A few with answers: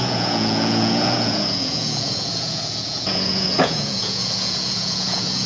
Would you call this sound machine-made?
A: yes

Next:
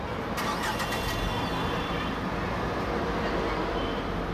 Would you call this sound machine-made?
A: no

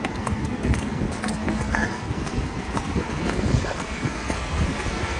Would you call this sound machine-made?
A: yes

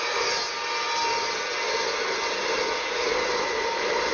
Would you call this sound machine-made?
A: no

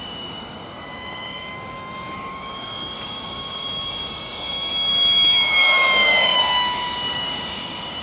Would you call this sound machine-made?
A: yes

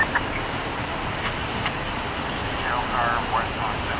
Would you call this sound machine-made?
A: no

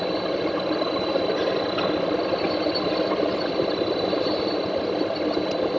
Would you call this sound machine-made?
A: no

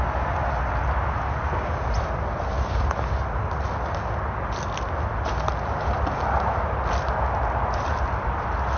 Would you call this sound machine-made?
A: no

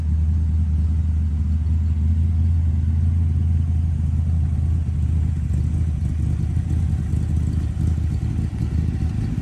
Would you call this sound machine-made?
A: no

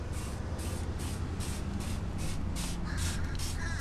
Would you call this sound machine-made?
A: no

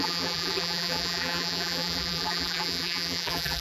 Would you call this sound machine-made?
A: yes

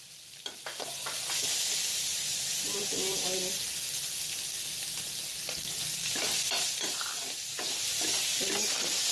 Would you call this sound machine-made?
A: no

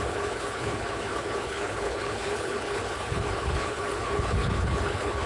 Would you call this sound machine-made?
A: yes